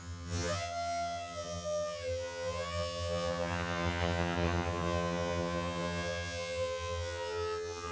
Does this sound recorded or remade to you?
remade